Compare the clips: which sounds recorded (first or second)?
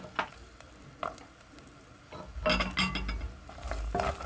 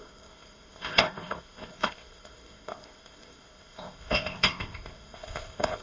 first